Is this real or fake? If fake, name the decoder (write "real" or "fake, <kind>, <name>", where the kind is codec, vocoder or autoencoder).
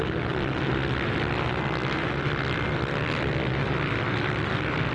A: real